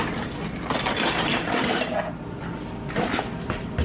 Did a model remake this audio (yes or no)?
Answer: no